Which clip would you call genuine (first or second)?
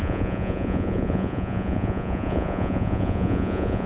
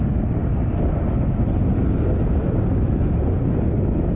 second